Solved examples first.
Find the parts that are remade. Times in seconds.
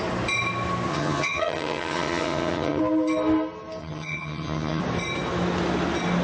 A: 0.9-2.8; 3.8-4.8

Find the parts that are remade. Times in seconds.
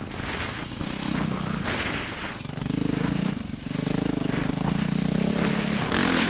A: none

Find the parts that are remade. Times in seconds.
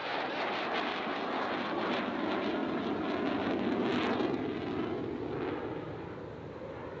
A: none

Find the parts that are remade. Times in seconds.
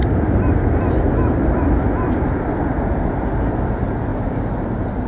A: none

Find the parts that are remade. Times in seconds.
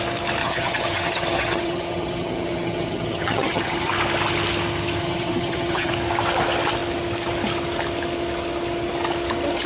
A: 0.4-3.9; 5.0-5.9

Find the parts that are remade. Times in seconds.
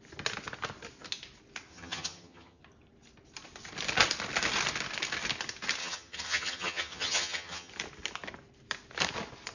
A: 1.7-2.6; 5.8-7.7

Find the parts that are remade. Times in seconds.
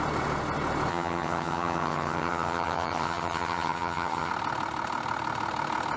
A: 0.9-4.3